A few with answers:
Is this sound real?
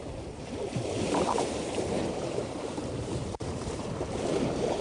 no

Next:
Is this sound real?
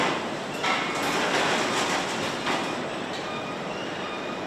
yes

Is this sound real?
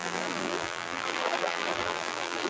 no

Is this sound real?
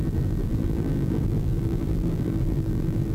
no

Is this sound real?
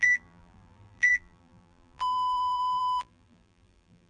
no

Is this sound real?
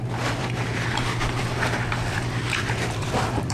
no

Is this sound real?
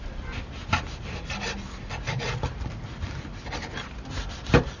no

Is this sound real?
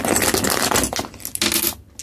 yes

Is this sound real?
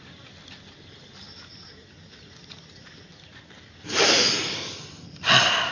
yes